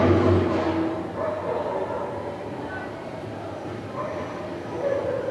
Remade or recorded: recorded